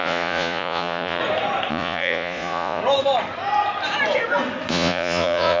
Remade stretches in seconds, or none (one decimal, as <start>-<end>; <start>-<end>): 0.0-1.2; 1.7-2.8; 4.7-5.6